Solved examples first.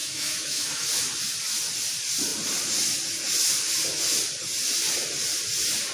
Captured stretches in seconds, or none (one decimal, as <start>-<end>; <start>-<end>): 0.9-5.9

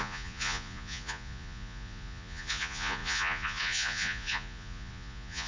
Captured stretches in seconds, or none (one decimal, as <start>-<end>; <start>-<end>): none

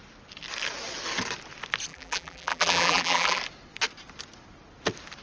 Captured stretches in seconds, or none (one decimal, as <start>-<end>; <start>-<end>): 0.0-1.9; 3.4-5.2